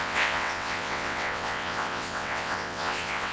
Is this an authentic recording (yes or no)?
no